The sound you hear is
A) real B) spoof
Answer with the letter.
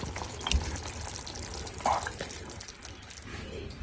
A